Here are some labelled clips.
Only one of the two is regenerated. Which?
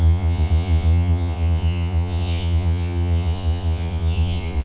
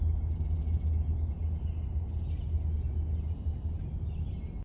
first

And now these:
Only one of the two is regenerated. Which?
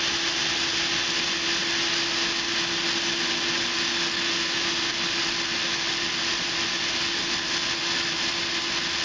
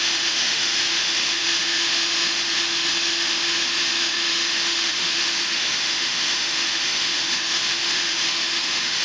second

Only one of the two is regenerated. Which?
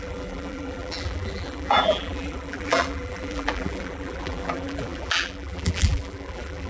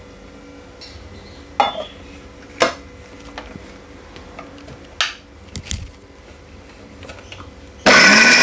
first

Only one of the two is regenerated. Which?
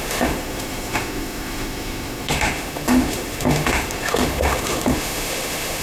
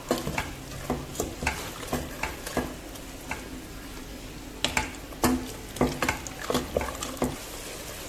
first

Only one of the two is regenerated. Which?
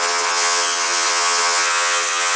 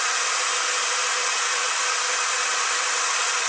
first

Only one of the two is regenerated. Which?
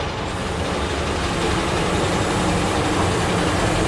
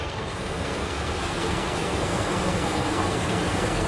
second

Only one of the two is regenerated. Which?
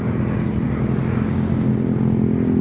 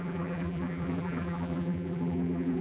second